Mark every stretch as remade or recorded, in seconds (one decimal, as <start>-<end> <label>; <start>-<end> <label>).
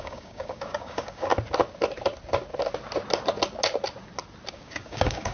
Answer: 0.0-1.3 remade; 1.3-4.5 recorded; 4.5-5.3 remade